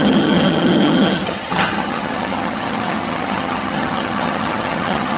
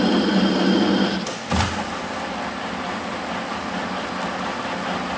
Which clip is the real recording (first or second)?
second